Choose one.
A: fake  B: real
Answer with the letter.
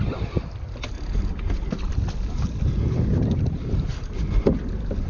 B